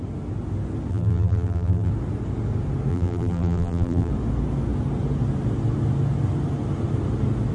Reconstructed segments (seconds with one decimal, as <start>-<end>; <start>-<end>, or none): 0.9-1.9; 2.9-4.1